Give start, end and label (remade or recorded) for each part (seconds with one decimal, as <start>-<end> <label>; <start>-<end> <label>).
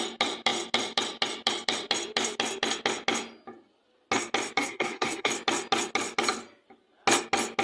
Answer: 0.0-4.6 recorded; 4.6-5.3 remade; 5.3-7.6 recorded